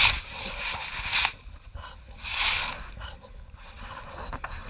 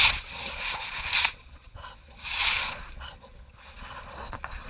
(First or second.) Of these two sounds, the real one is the first